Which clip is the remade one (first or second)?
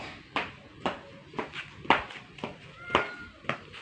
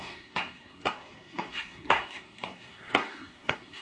second